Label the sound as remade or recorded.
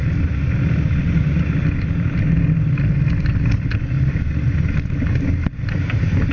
recorded